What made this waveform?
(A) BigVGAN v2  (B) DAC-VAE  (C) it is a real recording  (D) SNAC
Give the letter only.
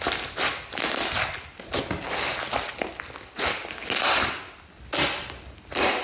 C